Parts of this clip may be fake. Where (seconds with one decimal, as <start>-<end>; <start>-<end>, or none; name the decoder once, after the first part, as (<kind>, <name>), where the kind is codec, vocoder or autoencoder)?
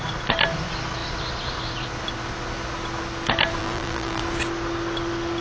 3.6-4.2 (vocoder, BigVGAN v2)